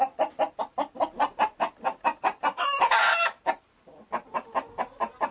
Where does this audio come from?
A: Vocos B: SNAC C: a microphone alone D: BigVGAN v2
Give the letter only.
C